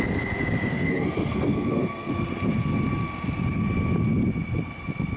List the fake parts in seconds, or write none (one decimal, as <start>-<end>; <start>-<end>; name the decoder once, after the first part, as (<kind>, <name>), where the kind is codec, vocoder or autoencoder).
0.7-2.1 (codec, SNAC)